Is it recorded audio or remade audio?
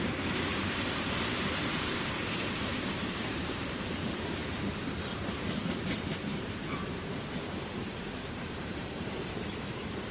remade